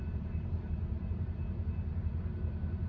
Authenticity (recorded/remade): remade